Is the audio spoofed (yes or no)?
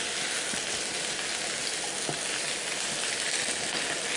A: no